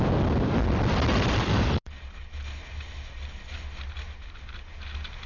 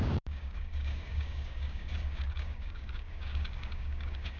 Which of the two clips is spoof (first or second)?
second